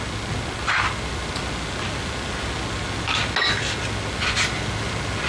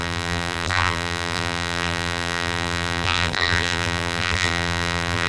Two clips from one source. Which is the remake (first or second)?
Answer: second